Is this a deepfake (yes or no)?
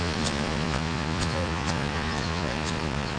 yes